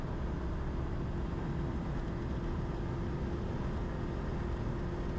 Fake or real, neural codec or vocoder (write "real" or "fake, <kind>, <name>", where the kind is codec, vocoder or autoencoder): real